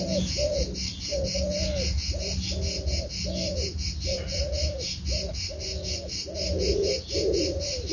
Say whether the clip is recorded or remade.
recorded